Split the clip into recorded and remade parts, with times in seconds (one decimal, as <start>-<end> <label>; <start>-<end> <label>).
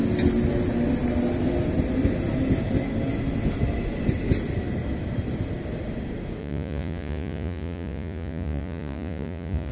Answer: 0.0-6.4 recorded; 6.4-9.7 remade